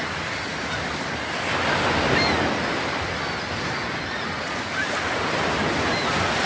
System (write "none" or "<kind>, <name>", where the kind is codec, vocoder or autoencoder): none